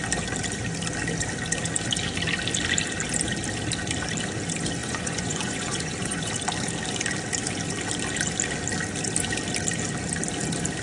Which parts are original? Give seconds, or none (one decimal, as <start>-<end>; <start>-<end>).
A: 0.0-4.8; 6.3-10.8